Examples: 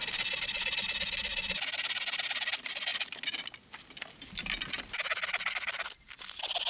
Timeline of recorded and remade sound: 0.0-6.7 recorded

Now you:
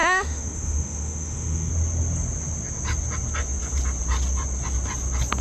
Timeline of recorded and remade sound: 0.0-1.7 remade; 1.7-5.4 recorded

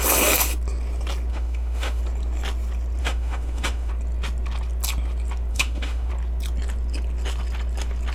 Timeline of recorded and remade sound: 0.0-1.3 recorded; 1.3-2.0 remade; 2.0-3.0 recorded; 3.0-3.9 remade; 3.9-5.5 recorded; 5.5-6.1 remade; 6.1-8.1 recorded

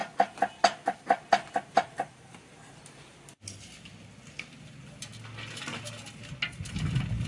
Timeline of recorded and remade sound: 0.0-7.3 recorded

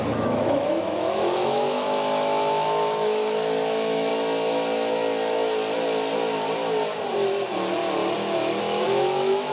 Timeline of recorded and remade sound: 0.0-4.1 remade; 4.1-8.6 recorded; 8.6-9.5 remade